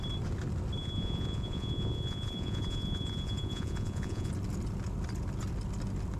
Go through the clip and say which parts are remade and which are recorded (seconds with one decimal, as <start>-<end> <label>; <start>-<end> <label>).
0.0-0.8 recorded; 0.8-4.3 remade; 4.3-6.2 recorded